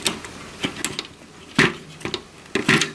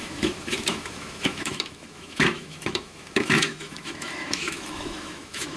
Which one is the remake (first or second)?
second